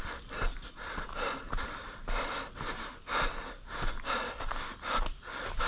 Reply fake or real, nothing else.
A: real